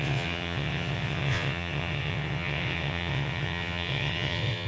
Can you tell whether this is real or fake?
fake